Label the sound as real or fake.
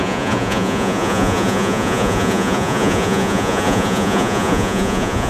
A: fake